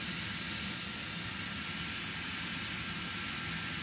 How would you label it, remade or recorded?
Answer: recorded